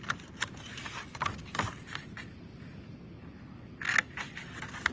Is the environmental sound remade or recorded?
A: recorded